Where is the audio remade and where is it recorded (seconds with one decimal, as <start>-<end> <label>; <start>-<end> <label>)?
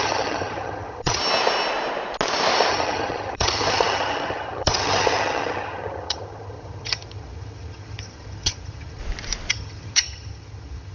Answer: 0.0-1.2 remade; 1.2-2.7 recorded; 2.7-9.0 remade; 9.0-9.5 recorded; 9.5-10.9 remade